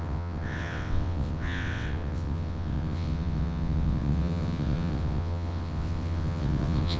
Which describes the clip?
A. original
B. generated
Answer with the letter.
B